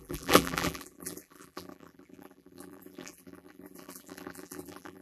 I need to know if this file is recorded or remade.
remade